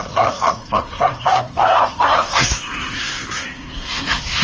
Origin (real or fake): fake